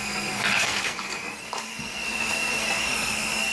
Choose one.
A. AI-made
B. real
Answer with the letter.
A